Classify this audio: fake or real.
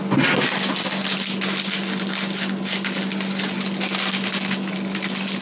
real